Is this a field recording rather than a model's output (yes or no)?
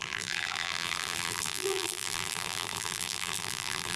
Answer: no